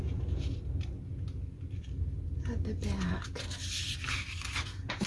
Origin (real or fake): real